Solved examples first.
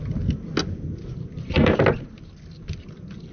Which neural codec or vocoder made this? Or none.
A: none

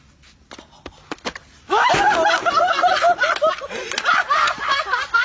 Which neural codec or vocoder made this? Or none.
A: none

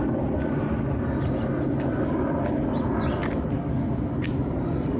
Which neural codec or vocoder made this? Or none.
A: none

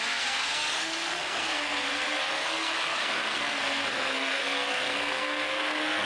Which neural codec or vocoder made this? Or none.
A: codec, SNAC